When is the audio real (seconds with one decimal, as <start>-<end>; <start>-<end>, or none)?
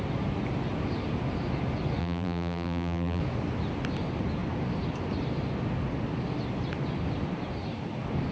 0.0-2.0; 3.2-8.3